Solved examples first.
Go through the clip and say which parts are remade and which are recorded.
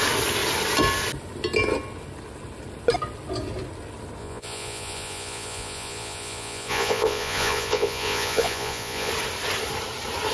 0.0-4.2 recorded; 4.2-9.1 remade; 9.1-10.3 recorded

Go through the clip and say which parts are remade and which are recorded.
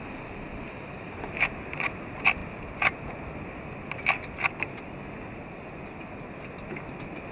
0.0-7.3 recorded